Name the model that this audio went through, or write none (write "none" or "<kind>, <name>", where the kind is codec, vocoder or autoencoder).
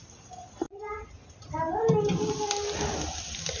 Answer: none